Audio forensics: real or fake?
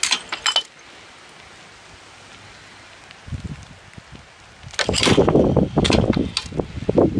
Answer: real